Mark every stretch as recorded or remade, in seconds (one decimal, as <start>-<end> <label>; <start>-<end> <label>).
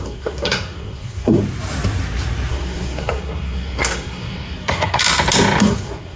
0.0-1.4 remade; 1.4-2.5 recorded; 2.5-5.0 remade; 5.0-5.6 recorded; 5.6-6.2 remade